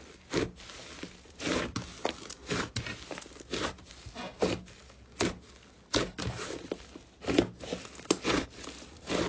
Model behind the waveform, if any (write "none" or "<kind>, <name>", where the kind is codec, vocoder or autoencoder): none